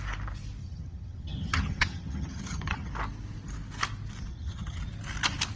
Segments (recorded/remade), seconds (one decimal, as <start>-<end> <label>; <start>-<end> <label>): 0.0-0.6 recorded; 0.6-2.9 remade; 2.9-4.3 recorded; 4.3-4.8 remade; 4.8-5.6 recorded